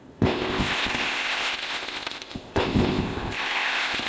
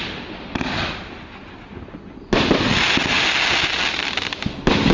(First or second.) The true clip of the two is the second